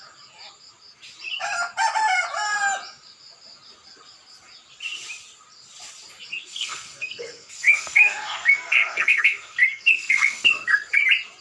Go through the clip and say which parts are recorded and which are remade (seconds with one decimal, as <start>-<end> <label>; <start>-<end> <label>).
0.0-6.3 recorded; 6.3-10.9 remade; 10.9-11.4 recorded